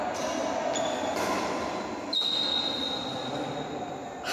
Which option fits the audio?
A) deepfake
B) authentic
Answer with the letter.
B